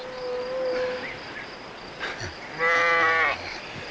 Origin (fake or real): real